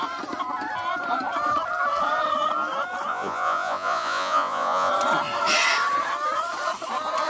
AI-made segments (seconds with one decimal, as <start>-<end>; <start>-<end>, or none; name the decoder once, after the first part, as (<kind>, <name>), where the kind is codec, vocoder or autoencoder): 3.1-4.9 (vocoder, Vocos)